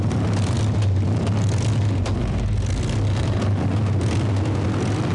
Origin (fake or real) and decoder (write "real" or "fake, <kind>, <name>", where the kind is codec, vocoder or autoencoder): real